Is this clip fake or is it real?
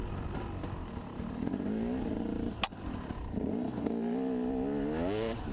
real